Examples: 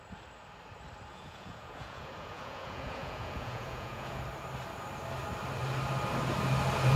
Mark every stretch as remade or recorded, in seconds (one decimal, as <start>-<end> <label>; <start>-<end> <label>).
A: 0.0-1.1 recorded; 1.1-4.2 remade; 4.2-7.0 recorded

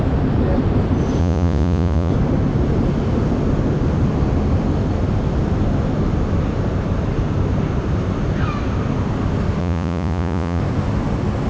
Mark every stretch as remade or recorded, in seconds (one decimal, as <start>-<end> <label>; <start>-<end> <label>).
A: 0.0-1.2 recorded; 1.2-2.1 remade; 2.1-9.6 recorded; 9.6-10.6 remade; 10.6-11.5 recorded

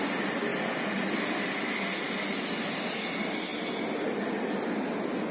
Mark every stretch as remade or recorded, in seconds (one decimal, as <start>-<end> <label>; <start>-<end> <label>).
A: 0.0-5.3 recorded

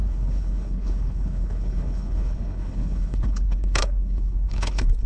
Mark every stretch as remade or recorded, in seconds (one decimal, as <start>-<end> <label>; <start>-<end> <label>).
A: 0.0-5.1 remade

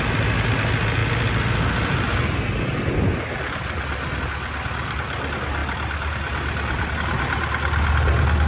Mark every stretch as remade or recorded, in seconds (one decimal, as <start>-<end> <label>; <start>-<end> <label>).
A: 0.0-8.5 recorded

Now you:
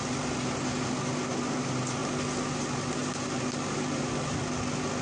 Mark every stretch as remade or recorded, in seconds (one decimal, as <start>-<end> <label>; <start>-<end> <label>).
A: 0.0-3.0 recorded; 3.0-4.1 remade; 4.1-5.0 recorded